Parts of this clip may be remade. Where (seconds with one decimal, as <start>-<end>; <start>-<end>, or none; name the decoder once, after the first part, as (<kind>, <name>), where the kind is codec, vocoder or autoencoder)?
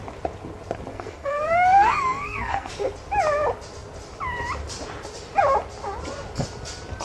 0.9-2.7 (codec, SNAC)